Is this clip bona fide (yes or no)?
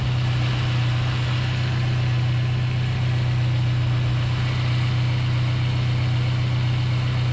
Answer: yes